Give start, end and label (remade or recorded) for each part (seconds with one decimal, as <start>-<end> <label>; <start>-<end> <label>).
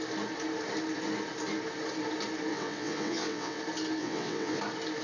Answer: 0.0-2.5 recorded; 2.5-3.6 remade; 3.6-4.0 recorded; 4.0-4.6 remade; 4.6-5.0 recorded